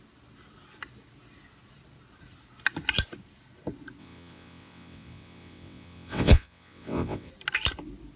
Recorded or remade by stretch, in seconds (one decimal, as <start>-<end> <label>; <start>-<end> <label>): 0.0-4.0 recorded; 4.0-7.3 remade; 7.3-8.2 recorded